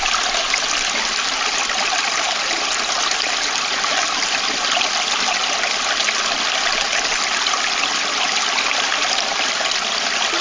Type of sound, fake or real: real